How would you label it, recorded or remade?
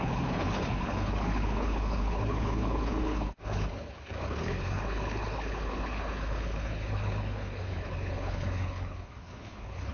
remade